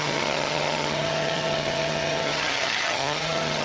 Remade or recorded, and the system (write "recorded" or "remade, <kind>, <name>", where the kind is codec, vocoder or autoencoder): remade, vocoder, HiFi-GAN